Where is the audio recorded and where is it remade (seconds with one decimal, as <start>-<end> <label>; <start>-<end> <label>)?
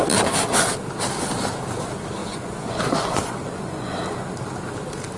0.0-2.2 recorded; 2.2-3.9 remade; 3.9-5.2 recorded